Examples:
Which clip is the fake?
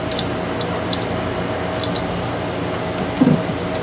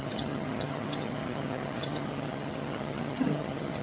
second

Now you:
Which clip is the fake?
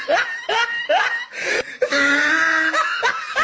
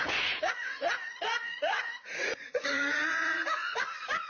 second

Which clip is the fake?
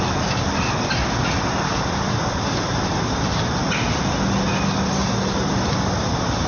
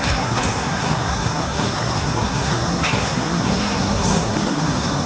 second